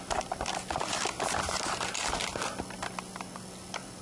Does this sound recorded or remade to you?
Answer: recorded